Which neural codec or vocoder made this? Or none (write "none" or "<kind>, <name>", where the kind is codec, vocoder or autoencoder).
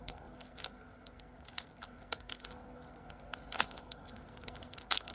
codec, SNAC